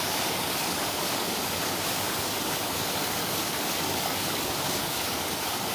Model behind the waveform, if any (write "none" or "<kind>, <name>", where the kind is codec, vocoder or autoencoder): codec, DAC